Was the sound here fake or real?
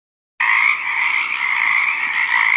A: real